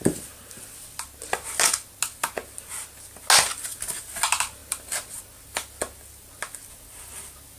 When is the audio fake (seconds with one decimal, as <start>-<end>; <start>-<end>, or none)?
none